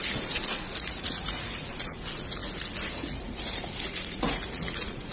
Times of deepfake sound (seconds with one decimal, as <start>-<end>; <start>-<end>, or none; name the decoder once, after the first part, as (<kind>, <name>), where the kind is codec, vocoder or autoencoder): 0.0-5.1 (vocoder, Vocos)